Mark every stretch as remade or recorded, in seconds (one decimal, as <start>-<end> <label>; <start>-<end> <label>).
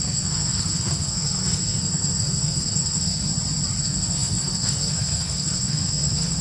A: 0.0-3.3 remade; 3.3-3.8 recorded; 3.8-6.4 remade